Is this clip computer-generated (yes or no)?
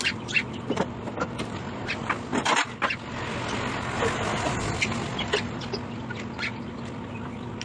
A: no